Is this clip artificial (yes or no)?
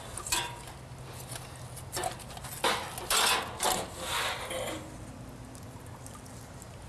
no